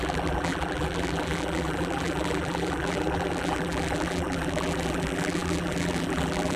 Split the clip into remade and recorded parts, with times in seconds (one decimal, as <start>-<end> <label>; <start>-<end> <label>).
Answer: 0.0-6.6 remade